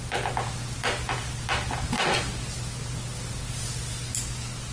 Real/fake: real